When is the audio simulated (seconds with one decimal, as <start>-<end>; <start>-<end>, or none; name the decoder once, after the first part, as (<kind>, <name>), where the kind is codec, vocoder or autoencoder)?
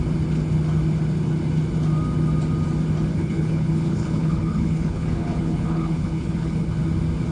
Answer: 3.1-6.8 (codec, HILCodec)